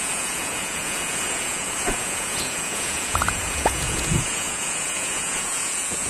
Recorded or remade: remade